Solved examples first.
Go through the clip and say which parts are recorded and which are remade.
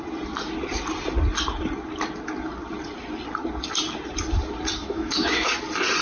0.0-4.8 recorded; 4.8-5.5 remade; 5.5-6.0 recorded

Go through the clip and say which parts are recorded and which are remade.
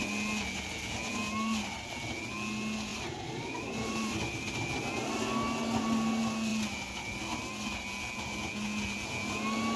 0.0-2.9 recorded; 2.9-4.7 remade; 4.7-9.8 recorded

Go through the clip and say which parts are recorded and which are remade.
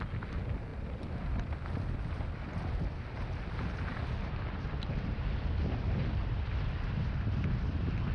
0.0-8.1 recorded